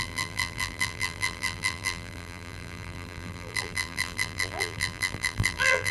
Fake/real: fake